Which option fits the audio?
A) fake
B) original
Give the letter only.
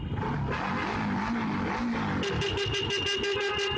B